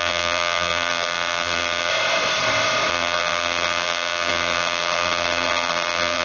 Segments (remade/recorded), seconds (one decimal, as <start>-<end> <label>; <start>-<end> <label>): 0.0-1.9 remade; 1.9-2.9 recorded; 2.9-6.2 remade